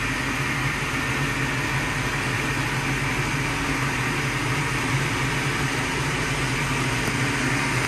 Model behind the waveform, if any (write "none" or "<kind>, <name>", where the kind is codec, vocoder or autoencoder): none